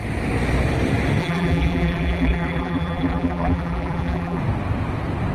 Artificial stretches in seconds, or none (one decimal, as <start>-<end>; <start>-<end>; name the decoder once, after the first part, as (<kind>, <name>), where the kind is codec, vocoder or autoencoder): 1.2-4.4 (vocoder, BigVGAN v2)